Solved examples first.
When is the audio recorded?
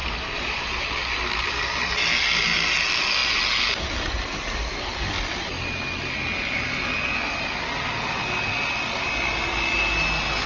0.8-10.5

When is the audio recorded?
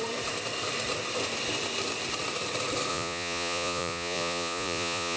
0.0-2.9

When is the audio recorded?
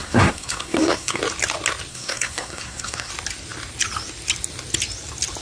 1.2-1.9; 3.1-5.4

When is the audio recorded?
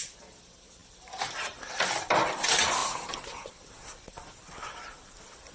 0.0-0.8; 2.4-2.8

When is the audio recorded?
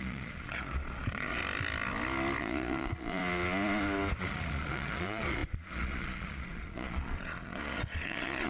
1.4-2.4; 3.2-4.2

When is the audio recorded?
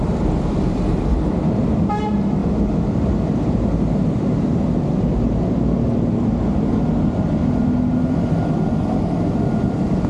2.4-7.5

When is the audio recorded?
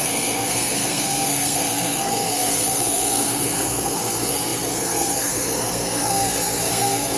none